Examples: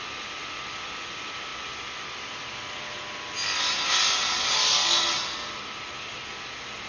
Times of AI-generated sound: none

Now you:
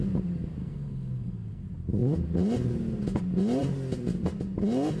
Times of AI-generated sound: 0.6-1.6